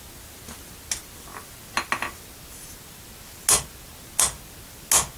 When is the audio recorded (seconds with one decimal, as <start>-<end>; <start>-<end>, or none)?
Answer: 0.0-5.2